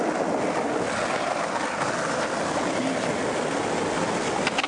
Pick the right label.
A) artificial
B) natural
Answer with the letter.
B